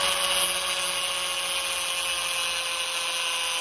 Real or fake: real